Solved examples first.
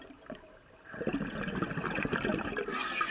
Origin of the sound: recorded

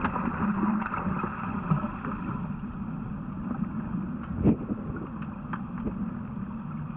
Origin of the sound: recorded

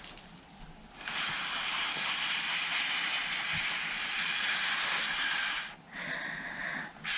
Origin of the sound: recorded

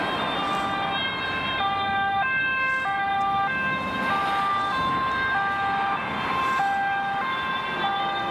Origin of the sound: recorded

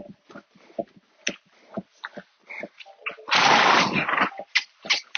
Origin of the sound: recorded